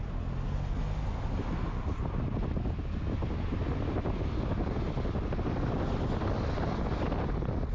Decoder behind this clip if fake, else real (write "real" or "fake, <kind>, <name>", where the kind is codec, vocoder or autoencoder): real